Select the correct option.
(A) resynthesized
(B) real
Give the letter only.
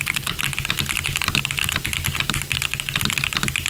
B